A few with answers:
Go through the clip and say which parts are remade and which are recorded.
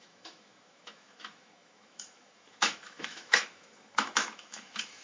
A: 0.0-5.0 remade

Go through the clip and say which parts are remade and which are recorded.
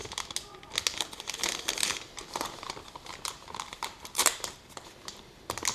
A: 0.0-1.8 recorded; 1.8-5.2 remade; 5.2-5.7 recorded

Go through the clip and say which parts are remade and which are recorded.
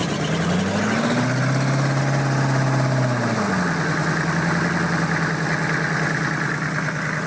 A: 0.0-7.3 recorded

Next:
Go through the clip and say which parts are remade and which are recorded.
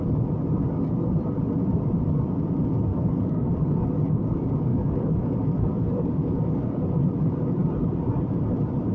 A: 0.0-2.9 recorded; 2.9-3.5 remade; 3.5-4.7 recorded; 4.7-6.8 remade; 6.8-8.9 recorded